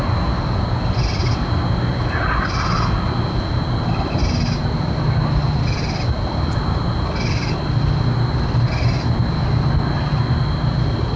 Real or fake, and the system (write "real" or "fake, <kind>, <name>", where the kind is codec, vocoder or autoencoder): real